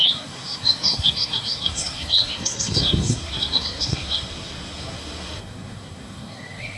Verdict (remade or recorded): remade